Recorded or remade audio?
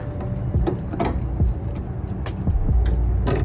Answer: recorded